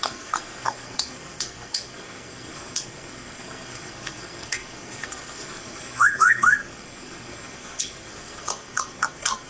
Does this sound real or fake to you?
fake